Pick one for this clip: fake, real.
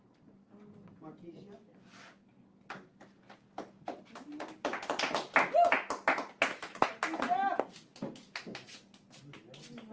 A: real